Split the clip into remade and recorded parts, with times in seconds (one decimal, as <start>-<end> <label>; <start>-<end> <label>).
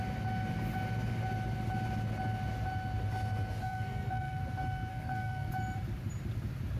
0.0-3.6 recorded; 3.6-4.4 remade; 4.4-4.9 recorded; 4.9-5.5 remade; 5.5-6.8 recorded